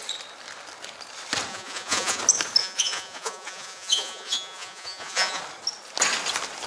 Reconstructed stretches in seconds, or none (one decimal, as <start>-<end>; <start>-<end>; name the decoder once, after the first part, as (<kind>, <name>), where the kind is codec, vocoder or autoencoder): 1.5-2.2 (vocoder, Vocos); 2.6-5.4